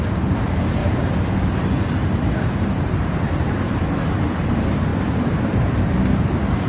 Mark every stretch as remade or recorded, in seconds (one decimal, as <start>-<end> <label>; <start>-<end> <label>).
0.0-0.8 remade; 0.8-2.6 recorded; 2.6-3.8 remade; 3.8-4.5 recorded; 4.5-6.7 remade